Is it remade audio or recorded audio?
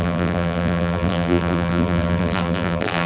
remade